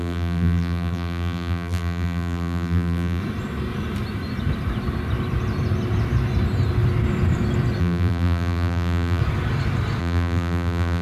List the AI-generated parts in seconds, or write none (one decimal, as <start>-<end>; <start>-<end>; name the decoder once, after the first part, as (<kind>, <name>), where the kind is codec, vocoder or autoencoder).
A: 0.0-3.2 (vocoder, BigVGAN v2); 7.8-9.2; 10.0-11.0